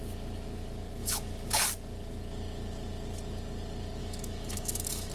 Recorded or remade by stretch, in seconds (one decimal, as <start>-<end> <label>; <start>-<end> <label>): 0.0-1.0 recorded; 1.0-1.6 remade; 1.6-4.0 recorded; 4.0-5.1 remade